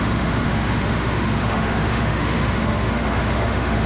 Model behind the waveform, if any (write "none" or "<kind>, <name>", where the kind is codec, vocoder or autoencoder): autoencoder, DAC-VAE